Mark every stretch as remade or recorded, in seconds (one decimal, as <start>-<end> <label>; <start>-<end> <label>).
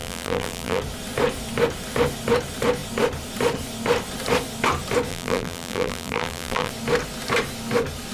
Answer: 0.0-0.8 remade; 0.8-5.1 recorded; 5.1-6.7 remade; 6.7-8.1 recorded